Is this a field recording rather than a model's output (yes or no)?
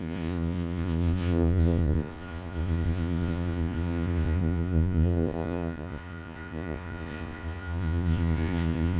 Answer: no